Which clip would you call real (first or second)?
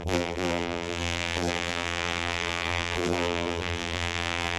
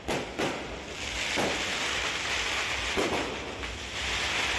second